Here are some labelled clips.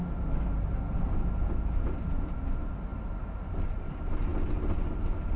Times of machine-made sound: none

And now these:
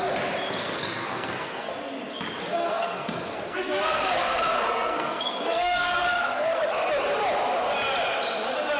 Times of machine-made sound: 0.6-1.7 (codec, SNAC); 2.5-6.6

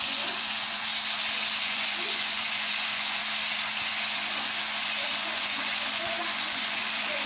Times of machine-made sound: 0.0-0.9 (vocoder, Vocos); 1.6-3.2; 3.9-7.3

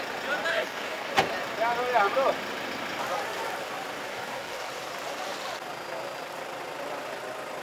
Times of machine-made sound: 0.5-1.1 (codec, DAC); 4.1-4.7

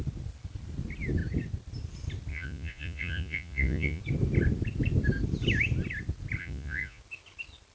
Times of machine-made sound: 2.3-4.0 (vocoder, Vocos); 6.4-7.0

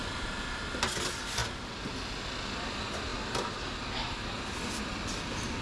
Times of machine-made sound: none

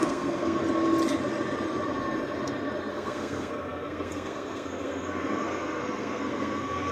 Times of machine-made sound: 0.0-0.6 (codec, SNAC); 2.9-6.9